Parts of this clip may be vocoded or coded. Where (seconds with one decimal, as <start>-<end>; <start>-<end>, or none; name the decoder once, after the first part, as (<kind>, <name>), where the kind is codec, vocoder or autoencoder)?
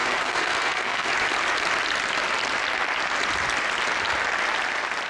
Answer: 0.0-1.1 (codec, SNAC)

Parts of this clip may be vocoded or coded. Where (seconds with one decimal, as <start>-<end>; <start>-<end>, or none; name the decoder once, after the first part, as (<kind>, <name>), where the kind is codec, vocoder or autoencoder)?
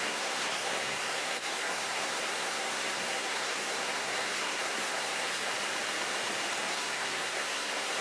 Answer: 0.0-5.4 (codec, SNAC); 6.6-8.0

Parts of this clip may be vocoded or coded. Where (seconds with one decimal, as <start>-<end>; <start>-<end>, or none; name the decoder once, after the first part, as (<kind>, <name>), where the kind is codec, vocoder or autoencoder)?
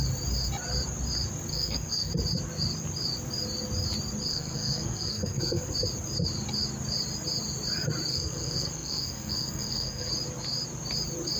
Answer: 1.5-2.1 (codec, SNAC); 4.3-5.7; 8.1-10.1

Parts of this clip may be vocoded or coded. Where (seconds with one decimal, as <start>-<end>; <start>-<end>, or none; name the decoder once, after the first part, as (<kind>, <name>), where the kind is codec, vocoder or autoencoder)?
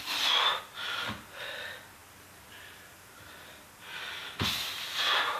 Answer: none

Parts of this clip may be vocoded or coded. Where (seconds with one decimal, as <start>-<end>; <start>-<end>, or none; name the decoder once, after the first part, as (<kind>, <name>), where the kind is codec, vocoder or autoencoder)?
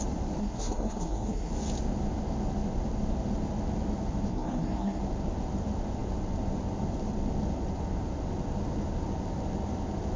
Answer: 0.4-1.5 (codec, SNAC); 4.3-5.0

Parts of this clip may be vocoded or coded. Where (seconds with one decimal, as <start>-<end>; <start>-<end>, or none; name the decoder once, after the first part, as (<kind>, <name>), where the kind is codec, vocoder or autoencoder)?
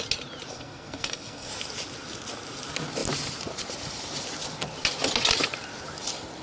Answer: 0.5-1.5 (codec, SNAC)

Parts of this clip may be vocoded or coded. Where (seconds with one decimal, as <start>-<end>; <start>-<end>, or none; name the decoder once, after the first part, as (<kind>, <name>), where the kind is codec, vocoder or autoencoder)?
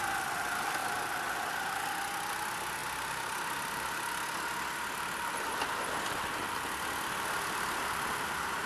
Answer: none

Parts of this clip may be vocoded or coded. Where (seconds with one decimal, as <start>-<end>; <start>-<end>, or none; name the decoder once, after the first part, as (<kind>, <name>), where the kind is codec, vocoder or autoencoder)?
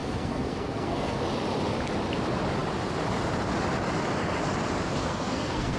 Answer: 0.0-1.2 (codec, SNAC); 5.0-5.8